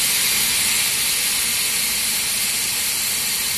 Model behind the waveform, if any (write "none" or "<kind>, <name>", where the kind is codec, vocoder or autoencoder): none